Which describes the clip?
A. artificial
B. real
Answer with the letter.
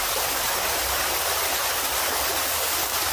B